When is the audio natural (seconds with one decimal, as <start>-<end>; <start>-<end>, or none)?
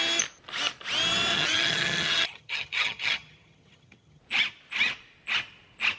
0.0-1.3; 4.2-6.0